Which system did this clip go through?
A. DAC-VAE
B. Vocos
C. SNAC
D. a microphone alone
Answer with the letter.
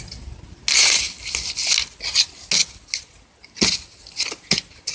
D